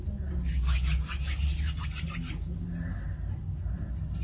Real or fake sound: real